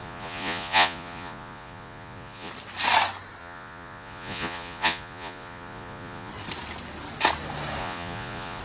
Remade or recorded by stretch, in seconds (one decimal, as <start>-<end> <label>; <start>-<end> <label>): 0.0-2.5 remade; 2.5-3.4 recorded; 3.4-6.3 remade; 6.3-7.8 recorded; 7.8-8.6 remade